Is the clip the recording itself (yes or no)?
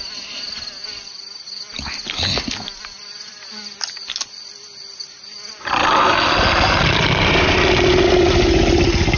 yes